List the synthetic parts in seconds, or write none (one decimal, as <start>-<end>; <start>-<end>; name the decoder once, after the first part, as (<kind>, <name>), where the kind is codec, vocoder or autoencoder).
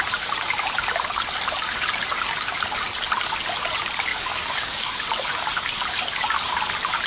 4.1-4.9 (codec, DAC)